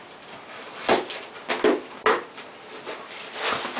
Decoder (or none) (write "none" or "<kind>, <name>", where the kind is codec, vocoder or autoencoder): none